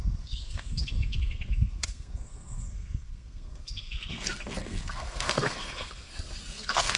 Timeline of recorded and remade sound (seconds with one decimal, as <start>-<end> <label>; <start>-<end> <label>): 0.0-7.0 remade